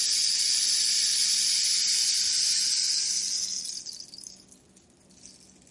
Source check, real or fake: real